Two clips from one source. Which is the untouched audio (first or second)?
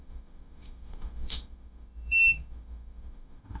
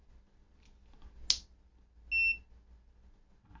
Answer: second